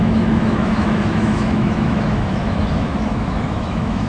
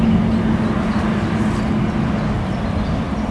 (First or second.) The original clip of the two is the second